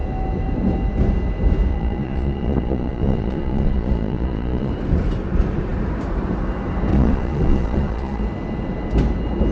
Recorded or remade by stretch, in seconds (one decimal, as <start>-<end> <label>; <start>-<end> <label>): 0.0-1.7 recorded; 1.7-4.7 remade; 4.7-6.9 recorded; 6.9-8.2 remade; 8.2-9.5 recorded